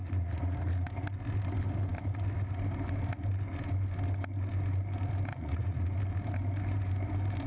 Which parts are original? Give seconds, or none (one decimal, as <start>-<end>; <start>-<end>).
0.9-5.3; 5.9-7.5